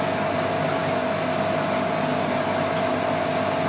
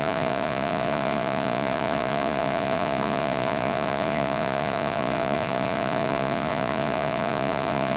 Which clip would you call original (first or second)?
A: first